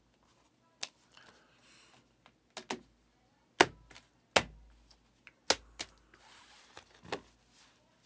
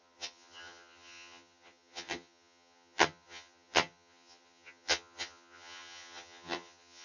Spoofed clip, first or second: second